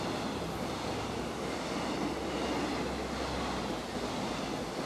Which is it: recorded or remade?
recorded